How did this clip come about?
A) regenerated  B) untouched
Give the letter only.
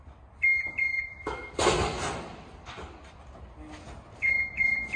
B